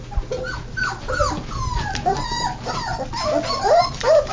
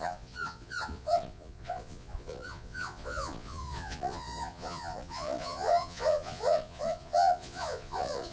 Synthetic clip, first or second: second